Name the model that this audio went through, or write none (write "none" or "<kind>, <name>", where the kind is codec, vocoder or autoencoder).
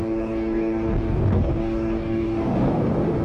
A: codec, DAC